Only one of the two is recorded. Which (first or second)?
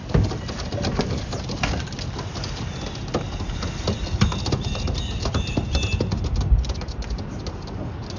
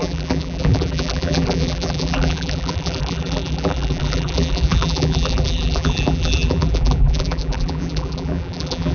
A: first